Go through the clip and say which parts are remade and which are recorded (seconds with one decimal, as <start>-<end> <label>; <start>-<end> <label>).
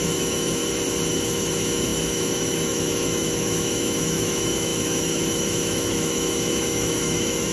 0.0-0.6 remade; 0.6-1.1 recorded; 1.1-7.5 remade